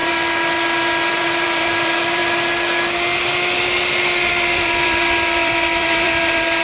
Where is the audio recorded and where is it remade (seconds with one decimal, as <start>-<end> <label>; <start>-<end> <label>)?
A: 0.0-0.8 recorded; 0.8-2.2 remade; 2.2-4.3 recorded; 4.3-6.6 remade